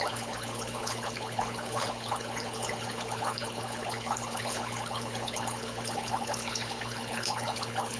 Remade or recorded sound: remade